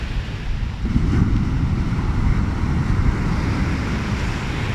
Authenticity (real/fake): real